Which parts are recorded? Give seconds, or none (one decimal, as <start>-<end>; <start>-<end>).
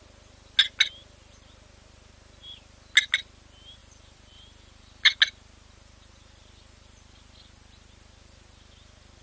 0.0-3.8; 5.2-9.2